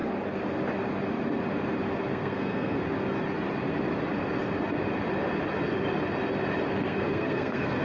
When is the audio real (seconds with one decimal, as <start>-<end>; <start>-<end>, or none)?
0.0-2.1; 2.8-6.8